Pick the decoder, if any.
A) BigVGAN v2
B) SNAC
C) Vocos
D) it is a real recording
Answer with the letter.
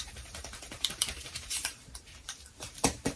A